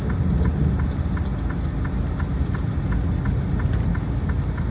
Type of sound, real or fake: real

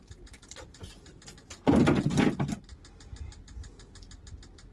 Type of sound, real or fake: real